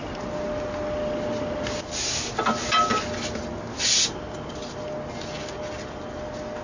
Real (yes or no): yes